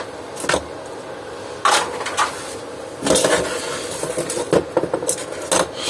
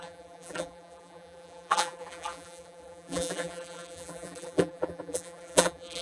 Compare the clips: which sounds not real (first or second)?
second